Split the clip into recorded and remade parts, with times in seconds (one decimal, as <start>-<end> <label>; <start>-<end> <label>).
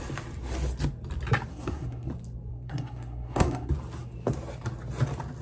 0.0-1.5 recorded; 1.5-2.1 remade; 2.1-2.5 recorded; 2.5-3.7 remade; 3.7-5.4 recorded